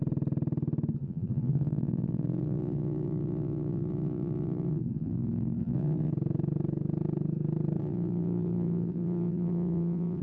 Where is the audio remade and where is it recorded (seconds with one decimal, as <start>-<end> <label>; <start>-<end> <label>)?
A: 0.0-1.0 recorded; 1.0-6.1 remade; 6.1-7.8 recorded; 7.8-10.2 remade